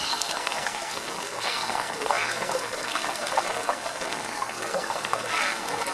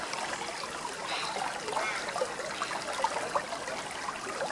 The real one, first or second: second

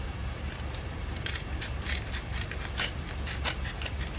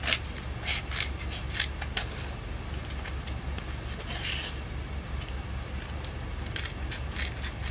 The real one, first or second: second